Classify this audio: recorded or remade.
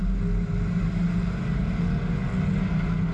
recorded